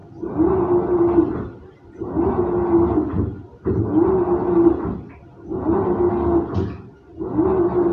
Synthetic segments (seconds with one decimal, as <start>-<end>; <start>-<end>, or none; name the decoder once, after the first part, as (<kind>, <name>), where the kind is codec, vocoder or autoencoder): none